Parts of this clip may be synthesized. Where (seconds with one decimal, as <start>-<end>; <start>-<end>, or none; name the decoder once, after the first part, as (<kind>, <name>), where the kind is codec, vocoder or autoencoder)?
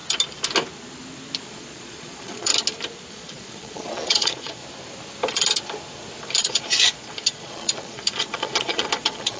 1.5-2.5 (vocoder, Vocos); 3.1-4.6; 6.4-9.4